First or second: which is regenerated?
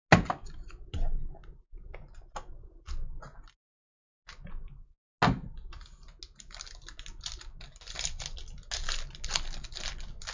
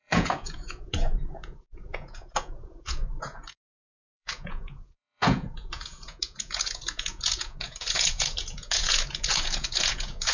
second